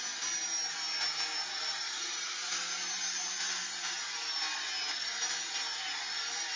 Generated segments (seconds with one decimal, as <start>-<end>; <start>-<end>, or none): none